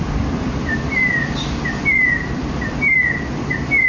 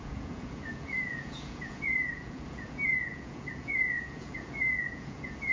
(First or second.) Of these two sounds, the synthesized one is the second